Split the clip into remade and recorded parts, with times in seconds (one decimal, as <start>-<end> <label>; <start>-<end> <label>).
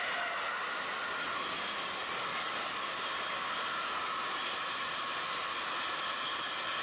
0.0-6.8 recorded